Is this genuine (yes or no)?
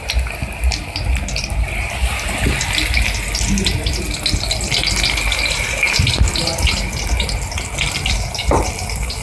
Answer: yes